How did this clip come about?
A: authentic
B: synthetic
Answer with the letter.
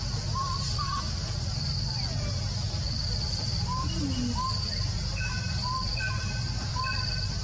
A